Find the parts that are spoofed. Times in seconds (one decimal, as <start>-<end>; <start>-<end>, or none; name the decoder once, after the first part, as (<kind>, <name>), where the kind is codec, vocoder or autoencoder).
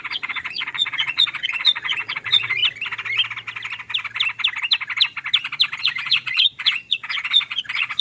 0.0-2.6 (vocoder, Vocos); 5.8-8.0